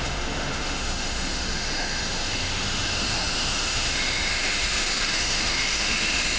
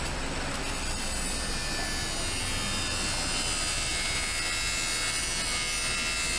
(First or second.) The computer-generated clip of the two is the first